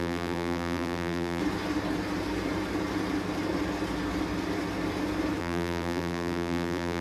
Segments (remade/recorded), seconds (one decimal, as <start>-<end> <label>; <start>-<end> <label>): 0.0-1.4 remade; 1.4-5.4 recorded; 5.4-7.0 remade